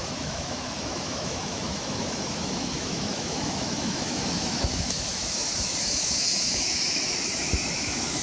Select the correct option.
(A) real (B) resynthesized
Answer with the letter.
B